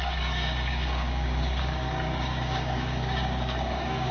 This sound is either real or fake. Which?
fake